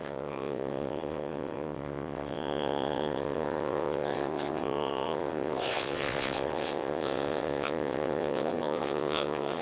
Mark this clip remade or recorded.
remade